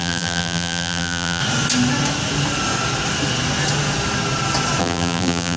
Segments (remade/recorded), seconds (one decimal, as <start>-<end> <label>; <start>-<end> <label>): 0.0-1.4 remade; 1.4-4.8 recorded; 4.8-5.6 remade